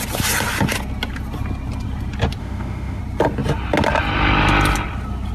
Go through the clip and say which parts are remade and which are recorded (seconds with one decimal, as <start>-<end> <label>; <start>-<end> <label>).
0.0-2.4 recorded; 2.4-3.0 remade; 3.0-5.3 recorded